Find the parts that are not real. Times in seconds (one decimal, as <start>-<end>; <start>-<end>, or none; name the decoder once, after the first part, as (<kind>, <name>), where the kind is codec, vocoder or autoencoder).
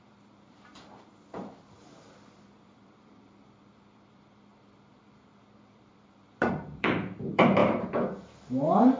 0.0-7.6 (vocoder, BigVGAN v2)